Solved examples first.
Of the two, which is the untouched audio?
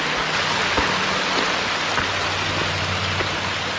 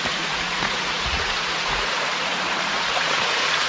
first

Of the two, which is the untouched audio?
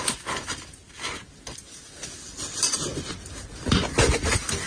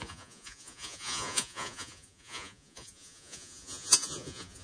first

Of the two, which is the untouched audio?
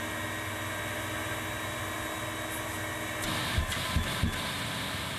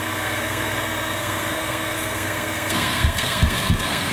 first